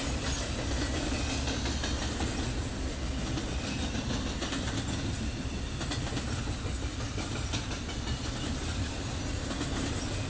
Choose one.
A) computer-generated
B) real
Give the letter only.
B